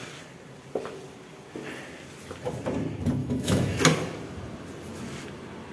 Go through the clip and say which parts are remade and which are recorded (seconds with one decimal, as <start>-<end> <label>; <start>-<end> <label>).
0.0-3.2 recorded; 3.2-3.8 remade; 3.8-5.7 recorded